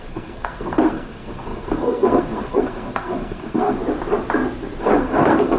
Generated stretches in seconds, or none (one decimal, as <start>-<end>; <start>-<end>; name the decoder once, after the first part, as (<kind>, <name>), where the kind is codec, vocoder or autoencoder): 0.0-3.8 (codec, SNAC); 4.8-5.6